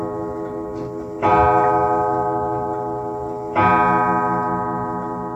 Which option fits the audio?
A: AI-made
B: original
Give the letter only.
B